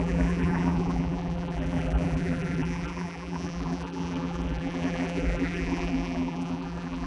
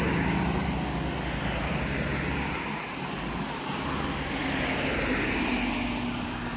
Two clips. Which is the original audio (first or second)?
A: second